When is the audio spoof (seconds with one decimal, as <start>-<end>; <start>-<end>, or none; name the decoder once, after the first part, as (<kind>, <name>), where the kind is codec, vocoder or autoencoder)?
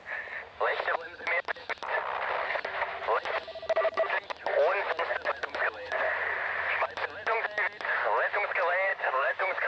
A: 8.9-9.7 (codec, DAC)